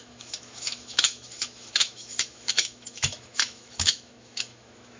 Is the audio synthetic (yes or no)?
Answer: yes